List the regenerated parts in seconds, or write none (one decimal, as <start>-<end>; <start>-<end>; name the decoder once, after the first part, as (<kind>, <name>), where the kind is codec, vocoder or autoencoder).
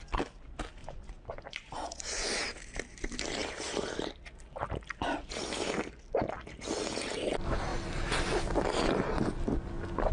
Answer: 0.8-2.3 (vocoder, Vocos)